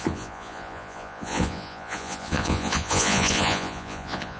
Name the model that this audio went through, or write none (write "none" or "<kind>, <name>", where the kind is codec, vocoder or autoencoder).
vocoder, Vocos